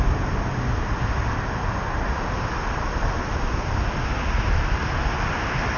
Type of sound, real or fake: real